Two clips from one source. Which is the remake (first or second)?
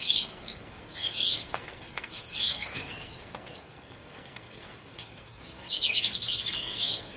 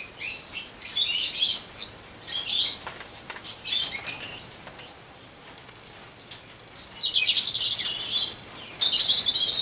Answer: first